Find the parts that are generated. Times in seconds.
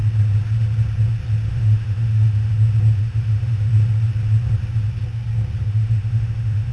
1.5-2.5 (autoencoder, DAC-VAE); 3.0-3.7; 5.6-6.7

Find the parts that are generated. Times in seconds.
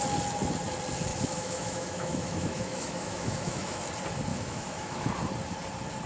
1.1-3.8 (autoencoder, DAC-VAE); 4.3-5.1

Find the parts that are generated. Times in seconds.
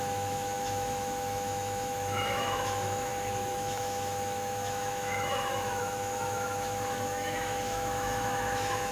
0.0-8.9 (autoencoder, DAC-VAE)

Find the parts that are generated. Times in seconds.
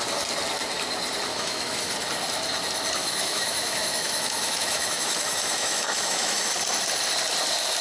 1.3-1.9 (autoencoder, DAC-VAE); 3.0-6.5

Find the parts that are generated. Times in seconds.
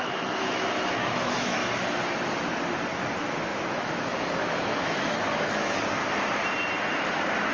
0.0-1.6 (autoencoder, DAC-VAE); 2.9-6.0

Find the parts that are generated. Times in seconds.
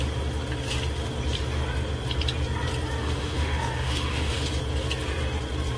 3.0-4.6 (autoencoder, DAC-VAE)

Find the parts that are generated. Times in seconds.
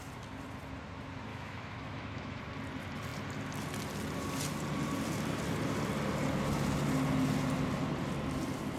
1.3-2.4 (autoencoder, DAC-VAE)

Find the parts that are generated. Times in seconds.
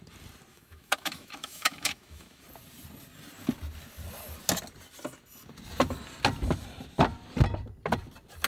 0.5-2.4 (autoencoder, DAC-VAE)